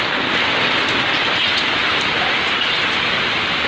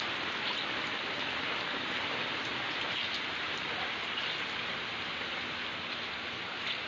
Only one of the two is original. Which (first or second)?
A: first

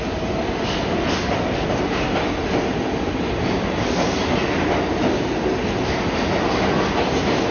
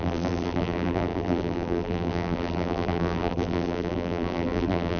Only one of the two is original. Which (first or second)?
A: first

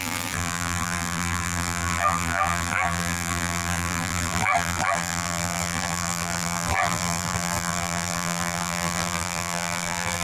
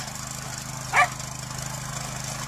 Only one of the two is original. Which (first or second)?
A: second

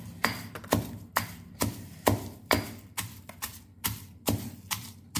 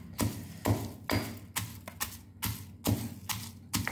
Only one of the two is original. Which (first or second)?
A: second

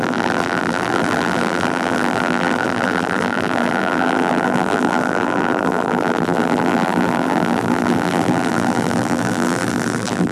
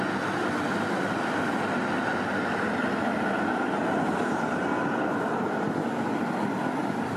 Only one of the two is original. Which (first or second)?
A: second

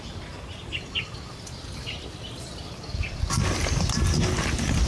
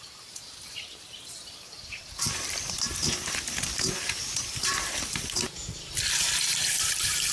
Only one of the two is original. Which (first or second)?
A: first